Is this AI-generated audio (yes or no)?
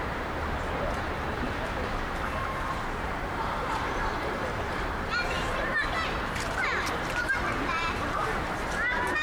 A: yes